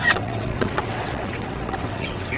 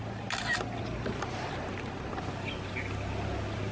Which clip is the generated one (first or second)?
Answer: first